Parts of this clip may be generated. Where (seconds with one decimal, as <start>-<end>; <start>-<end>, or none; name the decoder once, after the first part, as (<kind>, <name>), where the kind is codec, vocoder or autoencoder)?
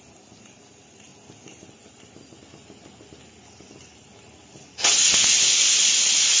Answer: none